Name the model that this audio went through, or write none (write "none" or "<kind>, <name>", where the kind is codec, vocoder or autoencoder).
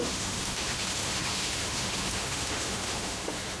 autoencoder, DAC-VAE